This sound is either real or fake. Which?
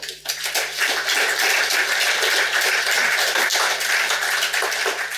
real